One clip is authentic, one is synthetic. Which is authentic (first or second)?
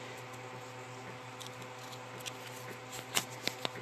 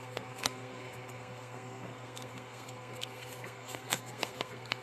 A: first